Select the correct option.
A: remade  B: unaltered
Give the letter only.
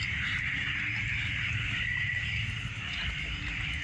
B